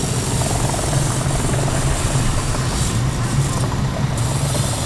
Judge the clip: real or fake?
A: fake